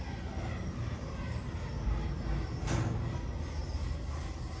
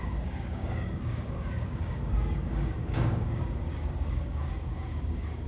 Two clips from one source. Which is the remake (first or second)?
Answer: second